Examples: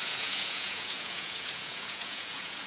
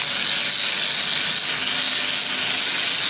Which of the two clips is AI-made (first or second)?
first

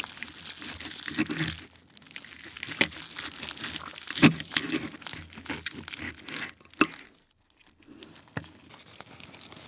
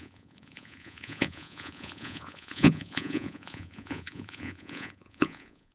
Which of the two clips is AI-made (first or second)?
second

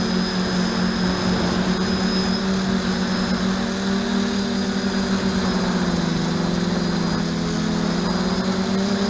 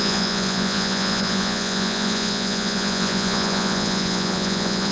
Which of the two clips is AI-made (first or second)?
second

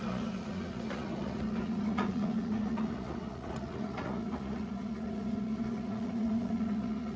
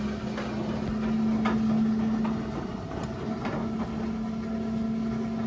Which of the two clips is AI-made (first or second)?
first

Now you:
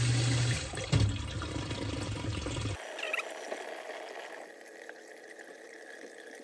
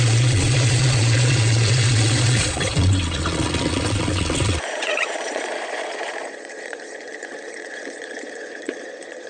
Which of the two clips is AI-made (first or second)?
second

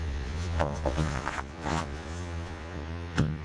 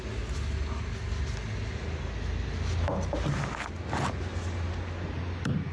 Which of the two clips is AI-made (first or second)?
first